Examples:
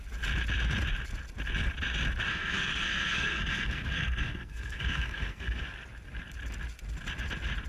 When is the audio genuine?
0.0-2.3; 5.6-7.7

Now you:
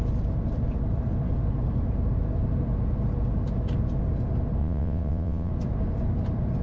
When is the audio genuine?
0.0-4.6; 5.5-6.6

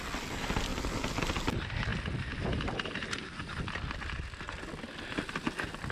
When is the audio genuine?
0.0-0.7; 1.4-5.9

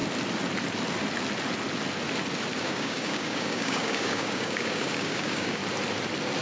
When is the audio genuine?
0.0-2.6; 5.6-6.4

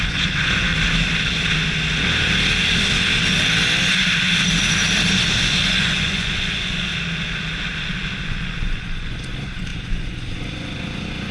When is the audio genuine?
0.7-5.4; 6.9-8.2

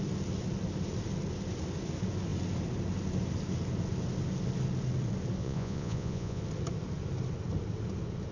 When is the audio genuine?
0.0-5.4; 6.4-8.3

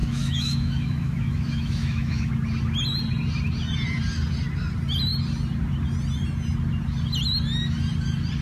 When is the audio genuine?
2.3-8.4

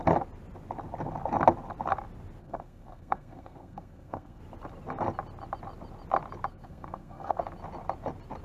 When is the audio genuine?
0.0-2.4; 4.4-6.5; 7.4-8.4